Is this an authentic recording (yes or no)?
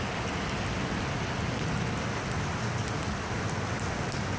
yes